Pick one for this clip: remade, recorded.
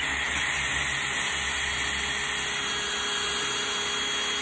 recorded